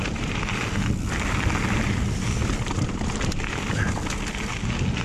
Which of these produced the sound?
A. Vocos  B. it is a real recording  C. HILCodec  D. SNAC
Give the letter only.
B